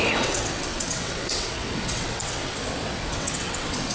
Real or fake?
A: fake